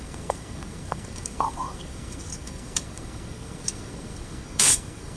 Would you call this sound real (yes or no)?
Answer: no